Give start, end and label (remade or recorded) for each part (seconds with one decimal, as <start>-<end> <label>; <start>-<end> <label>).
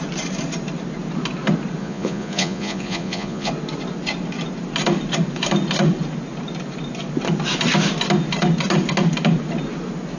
0.0-1.8 recorded; 1.8-3.5 remade; 3.5-10.2 recorded